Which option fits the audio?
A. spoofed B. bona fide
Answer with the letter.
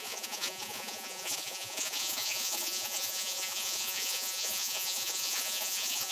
A